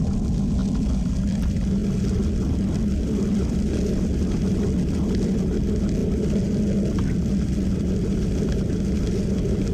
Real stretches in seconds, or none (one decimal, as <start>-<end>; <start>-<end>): 0.0-9.7